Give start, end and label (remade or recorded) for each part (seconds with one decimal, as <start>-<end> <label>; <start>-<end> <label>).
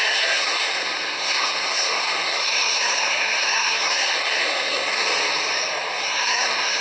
0.0-5.1 remade; 5.1-6.0 recorded; 6.0-6.8 remade